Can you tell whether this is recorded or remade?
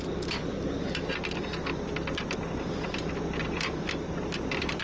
remade